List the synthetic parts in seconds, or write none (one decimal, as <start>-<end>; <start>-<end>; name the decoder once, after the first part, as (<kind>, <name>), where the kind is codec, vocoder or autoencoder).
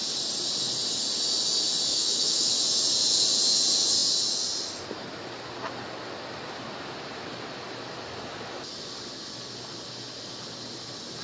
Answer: 1.9-2.5 (autoencoder, DAC-VAE)